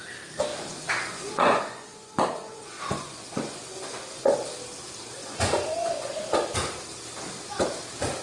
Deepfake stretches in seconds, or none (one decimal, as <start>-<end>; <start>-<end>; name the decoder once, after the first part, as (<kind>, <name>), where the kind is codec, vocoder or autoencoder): 0.5-4.3 (vocoder, Vocos); 5.2-6.2